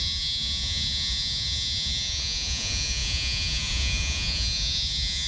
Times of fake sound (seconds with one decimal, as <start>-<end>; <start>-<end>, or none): 0.0-5.3